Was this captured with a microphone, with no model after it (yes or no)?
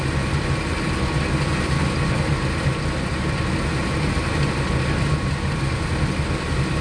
yes